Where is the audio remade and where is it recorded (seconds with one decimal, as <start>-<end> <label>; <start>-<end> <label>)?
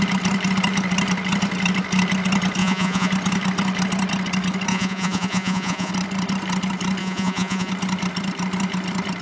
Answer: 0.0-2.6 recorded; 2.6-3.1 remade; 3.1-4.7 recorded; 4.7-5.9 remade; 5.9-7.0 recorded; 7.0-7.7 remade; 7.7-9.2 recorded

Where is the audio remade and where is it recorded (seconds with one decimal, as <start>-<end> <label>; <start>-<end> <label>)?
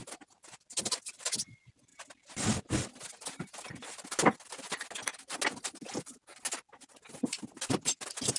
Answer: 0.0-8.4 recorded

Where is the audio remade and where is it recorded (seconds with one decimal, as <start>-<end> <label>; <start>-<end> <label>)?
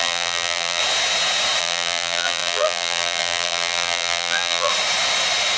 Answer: 0.0-0.8 remade; 0.8-1.6 recorded; 1.6-4.7 remade; 4.7-5.6 recorded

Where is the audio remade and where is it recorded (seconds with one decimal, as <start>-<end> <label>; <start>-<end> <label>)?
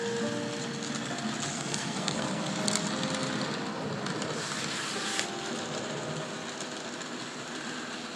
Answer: 0.0-1.5 recorded; 1.5-2.5 remade; 2.5-8.2 recorded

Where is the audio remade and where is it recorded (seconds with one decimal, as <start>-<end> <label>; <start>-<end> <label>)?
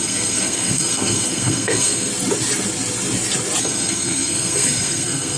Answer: 0.0-2.1 remade; 2.1-3.6 recorded; 3.6-5.4 remade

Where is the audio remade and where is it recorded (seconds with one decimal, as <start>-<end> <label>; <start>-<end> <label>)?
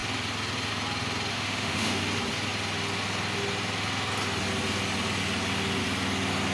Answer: 0.0-1.3 recorded; 1.3-2.0 remade; 2.0-6.5 recorded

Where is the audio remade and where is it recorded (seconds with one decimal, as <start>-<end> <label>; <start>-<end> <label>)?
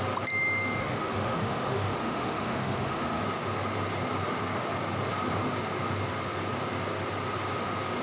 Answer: 0.0-0.8 recorded; 0.8-3.2 remade; 3.2-8.0 recorded